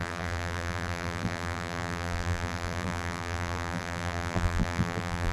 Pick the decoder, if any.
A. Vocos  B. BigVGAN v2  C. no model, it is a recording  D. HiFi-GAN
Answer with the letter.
B